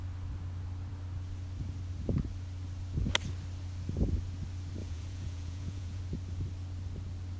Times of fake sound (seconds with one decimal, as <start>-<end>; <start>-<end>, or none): 4.8-6.0